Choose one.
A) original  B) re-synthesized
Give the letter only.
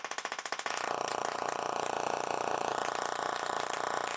B